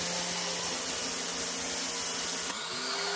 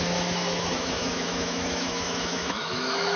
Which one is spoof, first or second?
second